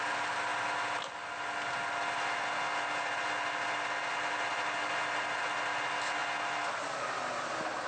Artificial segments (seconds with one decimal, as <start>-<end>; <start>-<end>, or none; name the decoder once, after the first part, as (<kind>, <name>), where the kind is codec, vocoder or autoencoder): none

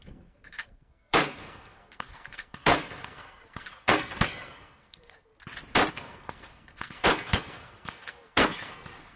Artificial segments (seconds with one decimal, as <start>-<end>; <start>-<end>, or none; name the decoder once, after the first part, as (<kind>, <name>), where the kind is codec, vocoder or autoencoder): 0.0-5.3 (codec, SNAC); 5.9-9.2

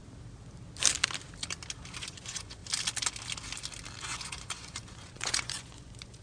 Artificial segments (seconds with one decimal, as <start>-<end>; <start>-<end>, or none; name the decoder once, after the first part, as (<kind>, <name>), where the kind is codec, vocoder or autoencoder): 2.0-2.6 (vocoder, Vocos); 4.0-6.2

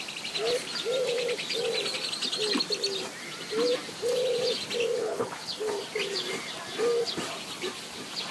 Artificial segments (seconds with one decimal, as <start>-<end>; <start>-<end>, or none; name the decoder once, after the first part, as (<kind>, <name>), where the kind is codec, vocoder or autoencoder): 5.0-5.7 (codec, HILCodec)

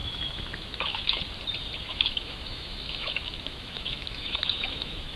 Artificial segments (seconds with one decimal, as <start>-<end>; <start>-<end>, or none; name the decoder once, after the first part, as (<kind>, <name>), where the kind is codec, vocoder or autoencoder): 0.0-1.2 (autoencoder, DAC-VAE); 1.8-5.2

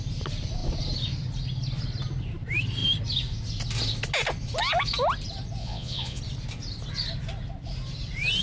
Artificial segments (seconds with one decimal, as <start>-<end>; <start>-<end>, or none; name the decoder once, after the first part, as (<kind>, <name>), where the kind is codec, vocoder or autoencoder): 5.6-6.2 (vocoder, Vocos)

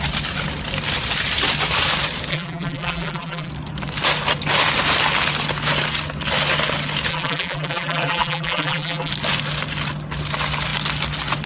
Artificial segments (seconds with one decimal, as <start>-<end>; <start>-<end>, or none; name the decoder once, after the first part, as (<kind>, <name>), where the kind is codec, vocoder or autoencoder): 2.3-3.5 (vocoder, BigVGAN v2); 7.1-9.1